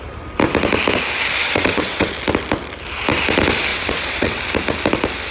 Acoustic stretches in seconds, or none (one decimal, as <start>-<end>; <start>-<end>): 0.0-1.4; 2.1-3.7; 4.4-5.3